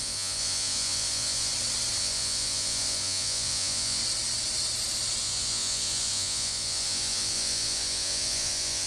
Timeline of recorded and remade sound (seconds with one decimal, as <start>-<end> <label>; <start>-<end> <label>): 0.0-1.5 remade; 1.5-2.0 recorded; 2.0-4.0 remade; 4.0-5.2 recorded; 5.2-8.9 remade